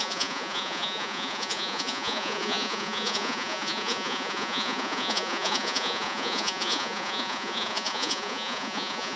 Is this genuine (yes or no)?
no